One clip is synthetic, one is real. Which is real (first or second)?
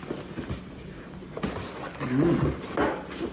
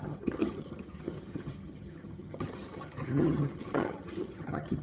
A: first